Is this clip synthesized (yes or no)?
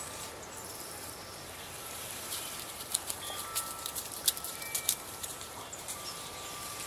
yes